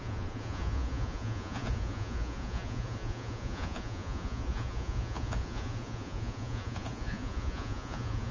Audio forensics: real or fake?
fake